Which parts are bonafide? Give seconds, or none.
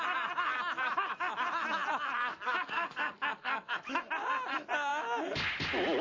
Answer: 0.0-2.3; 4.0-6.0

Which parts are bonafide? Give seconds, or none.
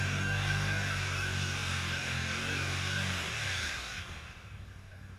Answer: none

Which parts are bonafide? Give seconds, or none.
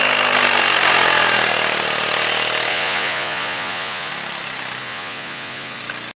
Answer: 0.0-2.7; 4.1-4.8; 5.8-6.2